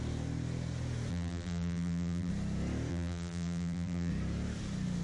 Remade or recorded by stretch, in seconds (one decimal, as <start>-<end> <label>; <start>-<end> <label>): 0.0-1.1 recorded; 1.1-2.3 remade; 2.3-2.9 recorded; 2.9-4.1 remade; 4.1-5.0 recorded